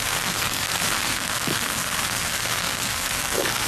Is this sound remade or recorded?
remade